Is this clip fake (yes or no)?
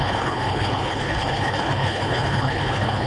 yes